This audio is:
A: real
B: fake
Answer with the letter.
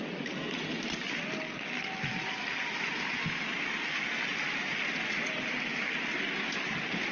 A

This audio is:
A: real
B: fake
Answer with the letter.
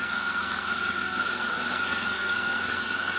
B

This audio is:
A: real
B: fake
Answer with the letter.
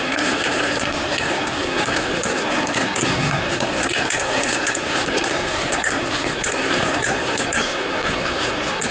B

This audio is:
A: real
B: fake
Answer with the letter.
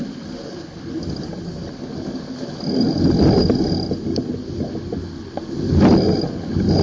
A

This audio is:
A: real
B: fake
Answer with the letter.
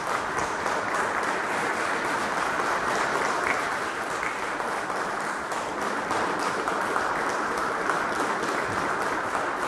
A